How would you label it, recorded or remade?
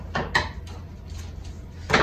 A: recorded